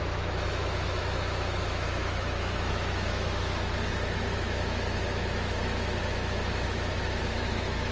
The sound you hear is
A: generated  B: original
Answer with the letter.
A